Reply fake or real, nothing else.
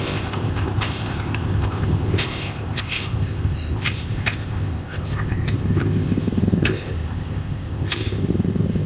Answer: fake